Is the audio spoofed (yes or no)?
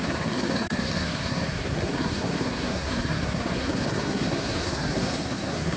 yes